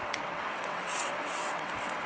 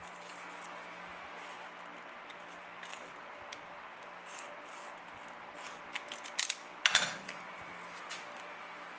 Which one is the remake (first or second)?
first